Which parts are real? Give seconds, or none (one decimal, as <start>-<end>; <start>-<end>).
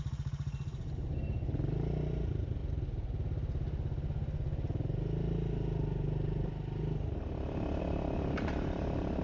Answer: 2.6-7.8